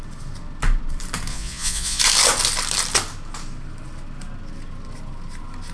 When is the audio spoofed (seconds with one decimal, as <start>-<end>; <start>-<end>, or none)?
1.3-2.0